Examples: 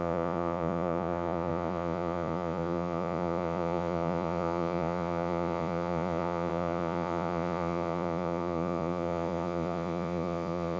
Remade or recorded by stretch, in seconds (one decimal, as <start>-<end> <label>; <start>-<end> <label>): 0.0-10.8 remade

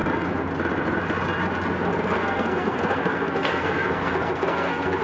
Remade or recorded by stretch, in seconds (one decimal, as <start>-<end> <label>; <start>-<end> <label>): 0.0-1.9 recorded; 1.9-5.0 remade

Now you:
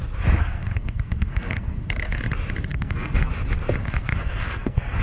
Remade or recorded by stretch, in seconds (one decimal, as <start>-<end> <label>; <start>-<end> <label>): 0.0-0.4 recorded; 0.4-2.2 remade; 2.2-2.7 recorded; 2.7-3.3 remade; 3.3-3.8 recorded; 3.8-5.0 remade

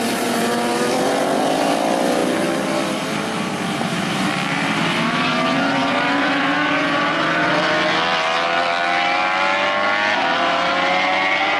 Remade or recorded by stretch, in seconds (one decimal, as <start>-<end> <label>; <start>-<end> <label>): 0.0-11.6 recorded

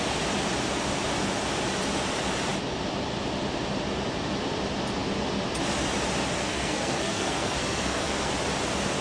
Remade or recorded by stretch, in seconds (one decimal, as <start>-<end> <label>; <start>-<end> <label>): 0.0-6.4 recorded; 6.4-8.3 remade; 8.3-9.0 recorded

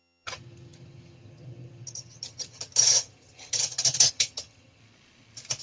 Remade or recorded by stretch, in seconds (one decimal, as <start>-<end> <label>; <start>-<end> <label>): 0.0-4.8 remade; 4.8-5.6 recorded

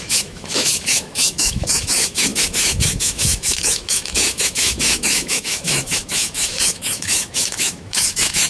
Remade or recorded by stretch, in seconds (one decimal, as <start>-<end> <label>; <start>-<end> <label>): 0.0-8.5 remade

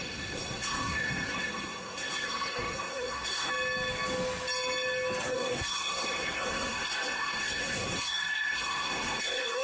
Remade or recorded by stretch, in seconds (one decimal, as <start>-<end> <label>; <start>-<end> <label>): 0.0-3.5 remade; 3.5-5.3 recorded; 5.3-9.6 remade